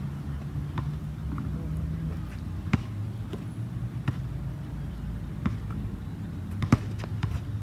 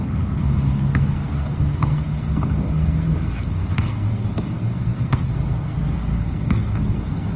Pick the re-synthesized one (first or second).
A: second